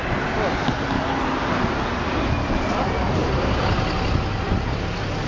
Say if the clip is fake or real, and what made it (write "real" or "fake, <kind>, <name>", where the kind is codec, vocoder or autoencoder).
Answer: real